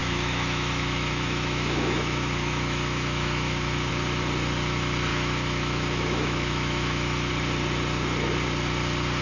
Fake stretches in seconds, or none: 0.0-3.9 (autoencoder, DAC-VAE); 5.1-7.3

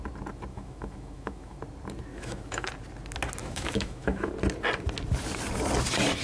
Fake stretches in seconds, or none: 0.5-1.6 (autoencoder, DAC-VAE); 2.1-2.7; 3.4-4.3

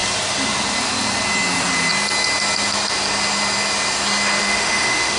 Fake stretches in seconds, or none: 4.4-5.2 (autoencoder, DAC-VAE)

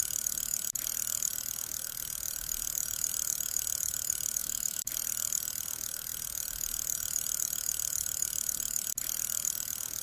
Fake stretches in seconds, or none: 4.4-4.9 (autoencoder, DAC-VAE)

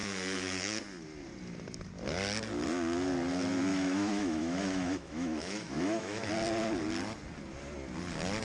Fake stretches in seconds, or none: 0.0-0.8 (autoencoder, DAC-VAE); 3.7-6.3

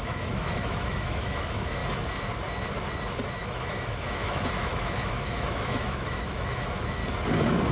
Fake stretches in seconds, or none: 0.0-1.8 (autoencoder, DAC-VAE); 3.4-7.0

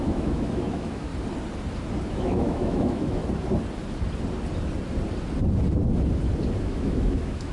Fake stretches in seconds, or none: 0.0-1.1 (autoencoder, DAC-VAE); 2.0-3.2; 6.6-7.5

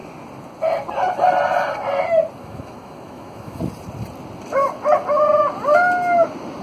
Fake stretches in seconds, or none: 2.4-3.6 (autoencoder, DAC-VAE)